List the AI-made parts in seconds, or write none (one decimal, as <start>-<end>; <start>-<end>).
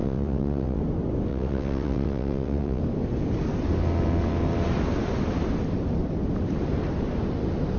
0.0-0.8; 1.3-2.8